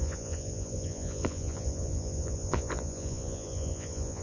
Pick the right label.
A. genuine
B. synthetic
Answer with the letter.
B